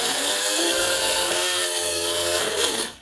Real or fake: fake